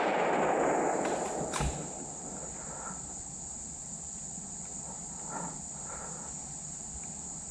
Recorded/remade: recorded